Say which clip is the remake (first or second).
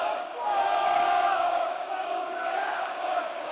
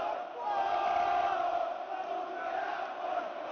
first